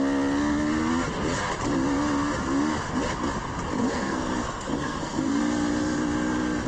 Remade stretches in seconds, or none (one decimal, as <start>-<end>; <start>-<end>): 3.8-5.4